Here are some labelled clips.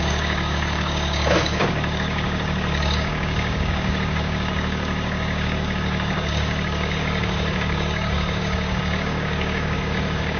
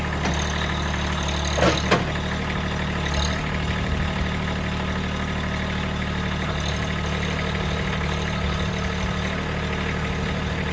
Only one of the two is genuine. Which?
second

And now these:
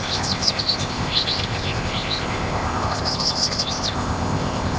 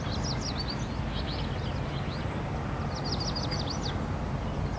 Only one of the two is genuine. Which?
second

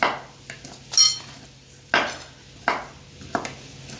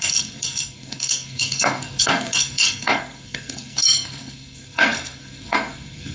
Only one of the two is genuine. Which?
first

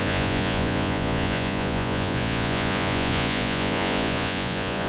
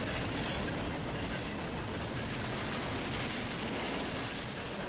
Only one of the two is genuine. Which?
second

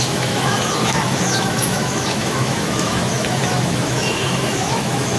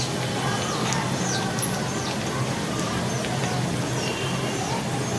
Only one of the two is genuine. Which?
second